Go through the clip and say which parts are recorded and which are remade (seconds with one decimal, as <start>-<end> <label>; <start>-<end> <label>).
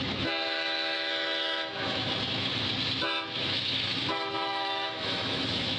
0.0-2.5 remade; 2.5-3.0 recorded; 3.0-5.8 remade